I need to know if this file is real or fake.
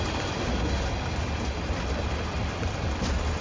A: real